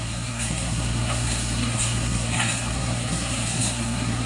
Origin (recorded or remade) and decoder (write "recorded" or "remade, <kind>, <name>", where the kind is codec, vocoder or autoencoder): remade, codec, SNAC